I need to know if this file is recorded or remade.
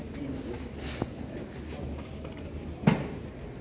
recorded